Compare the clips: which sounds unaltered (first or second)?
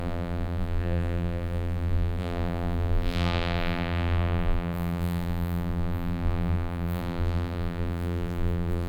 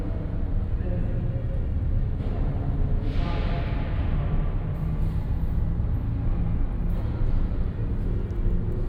second